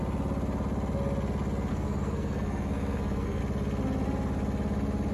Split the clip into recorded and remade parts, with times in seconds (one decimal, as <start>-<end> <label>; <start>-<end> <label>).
0.0-1.7 recorded; 1.7-3.4 remade; 3.4-5.1 recorded